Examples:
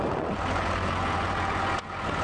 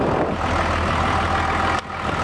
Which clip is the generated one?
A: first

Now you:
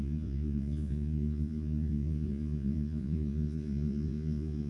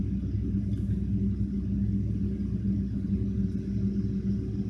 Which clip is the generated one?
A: first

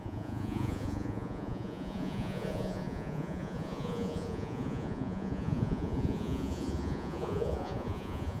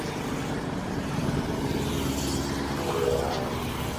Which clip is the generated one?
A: first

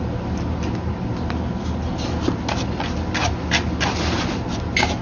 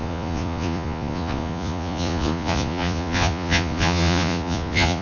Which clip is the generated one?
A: second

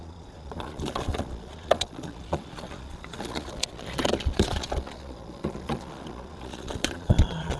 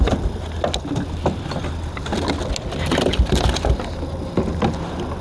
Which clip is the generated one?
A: first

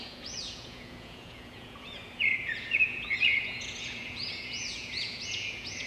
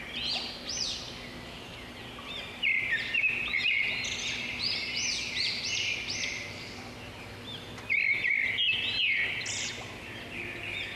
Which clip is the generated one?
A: first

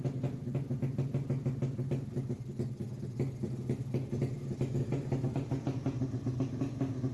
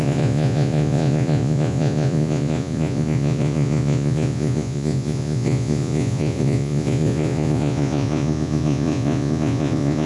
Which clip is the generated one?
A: second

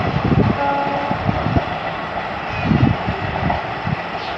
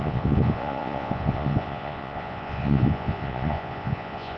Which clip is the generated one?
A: second